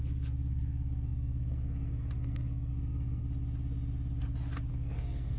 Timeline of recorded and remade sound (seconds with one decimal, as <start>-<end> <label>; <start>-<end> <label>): 0.0-3.2 remade; 3.2-4.7 recorded; 4.7-5.4 remade